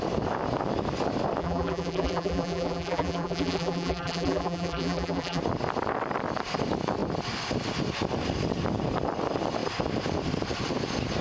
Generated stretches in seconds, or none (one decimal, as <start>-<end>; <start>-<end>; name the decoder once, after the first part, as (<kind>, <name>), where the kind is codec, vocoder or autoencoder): 1.4-5.4 (vocoder, BigVGAN v2)